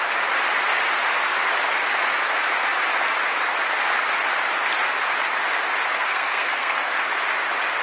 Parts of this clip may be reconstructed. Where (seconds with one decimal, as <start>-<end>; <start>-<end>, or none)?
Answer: 6.0-6.9